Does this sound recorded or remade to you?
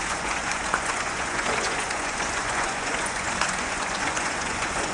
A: remade